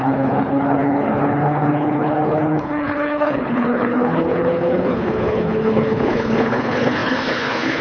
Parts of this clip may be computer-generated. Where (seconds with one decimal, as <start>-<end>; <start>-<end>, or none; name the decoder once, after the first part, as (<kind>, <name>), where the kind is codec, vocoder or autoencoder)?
0.0-7.8 (codec, HILCodec)